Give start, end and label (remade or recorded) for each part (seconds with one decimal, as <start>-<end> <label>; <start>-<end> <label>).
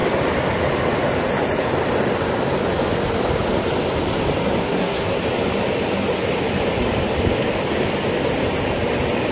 0.0-4.6 recorded; 4.6-5.2 remade; 5.2-9.3 recorded